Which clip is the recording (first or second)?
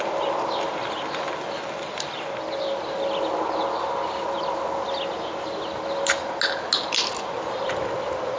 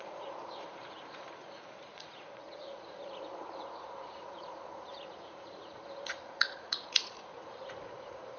first